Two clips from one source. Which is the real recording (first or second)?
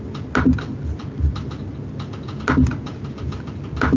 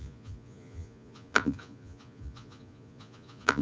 first